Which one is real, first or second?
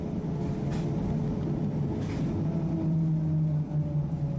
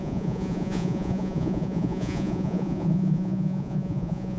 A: first